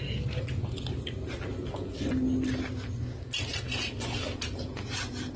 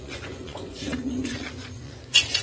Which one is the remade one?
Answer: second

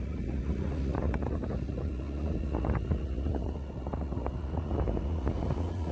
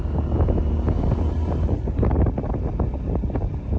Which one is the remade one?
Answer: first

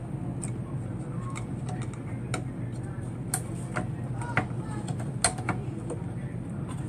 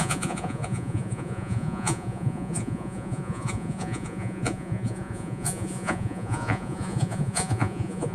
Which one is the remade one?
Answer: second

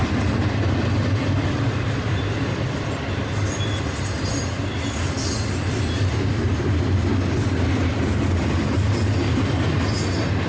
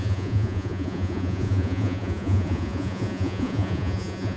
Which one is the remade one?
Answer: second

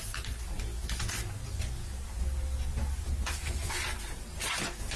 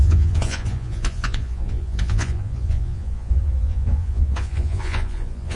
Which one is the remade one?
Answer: second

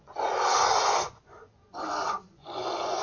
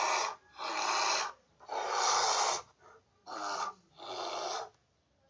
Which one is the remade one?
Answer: first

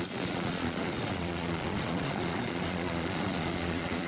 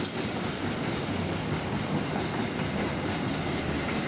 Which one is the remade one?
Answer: first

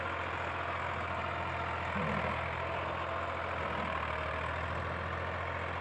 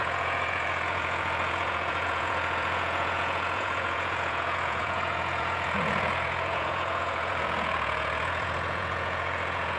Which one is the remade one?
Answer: second